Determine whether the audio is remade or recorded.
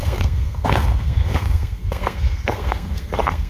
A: remade